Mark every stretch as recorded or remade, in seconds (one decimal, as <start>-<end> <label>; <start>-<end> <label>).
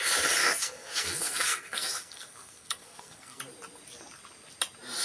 0.0-0.4 recorded; 0.4-3.4 remade; 3.4-5.0 recorded